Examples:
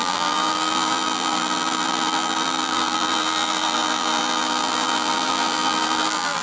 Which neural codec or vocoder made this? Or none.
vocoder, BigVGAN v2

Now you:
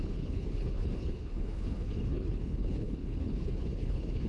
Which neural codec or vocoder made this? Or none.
codec, HILCodec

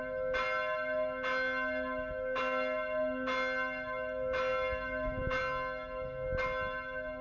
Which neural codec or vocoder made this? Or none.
none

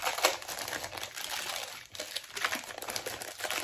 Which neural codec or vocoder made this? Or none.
none